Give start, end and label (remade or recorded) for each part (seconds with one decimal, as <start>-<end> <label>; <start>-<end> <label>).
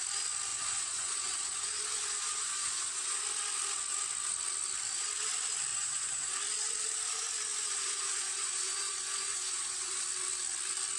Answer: 0.0-0.5 recorded; 0.5-3.2 remade; 3.2-5.7 recorded; 5.7-6.3 remade; 6.3-7.5 recorded; 7.5-10.0 remade; 10.0-11.0 recorded